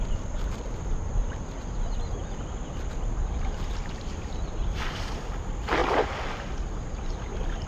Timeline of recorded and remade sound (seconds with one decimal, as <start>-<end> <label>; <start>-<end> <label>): 0.0-2.2 recorded; 2.2-5.1 remade; 5.1-7.7 recorded